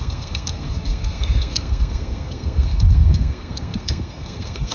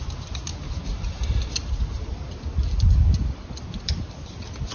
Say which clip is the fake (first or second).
first